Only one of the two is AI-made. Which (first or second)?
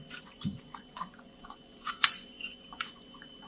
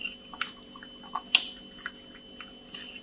first